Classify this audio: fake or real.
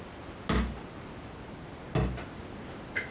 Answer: real